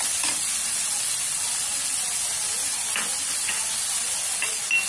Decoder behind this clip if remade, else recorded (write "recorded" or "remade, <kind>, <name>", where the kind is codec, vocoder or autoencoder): recorded